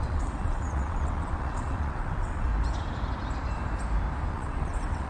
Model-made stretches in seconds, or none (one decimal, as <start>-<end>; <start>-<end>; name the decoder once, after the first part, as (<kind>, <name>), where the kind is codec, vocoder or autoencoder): 0.0-2.5 (vocoder, WaveNeXt); 4.3-5.1